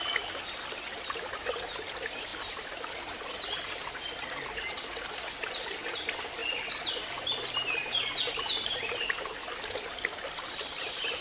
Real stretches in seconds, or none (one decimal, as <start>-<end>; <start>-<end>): 0.0-11.2